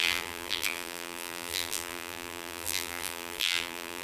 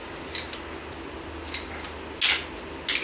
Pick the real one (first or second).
second